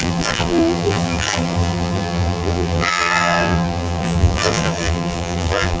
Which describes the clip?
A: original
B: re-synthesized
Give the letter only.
B